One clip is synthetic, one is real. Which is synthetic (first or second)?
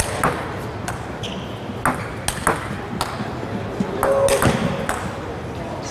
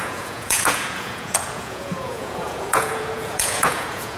second